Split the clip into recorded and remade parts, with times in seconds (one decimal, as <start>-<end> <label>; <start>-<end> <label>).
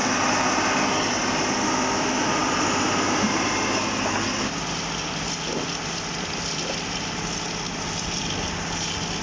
0.0-9.2 recorded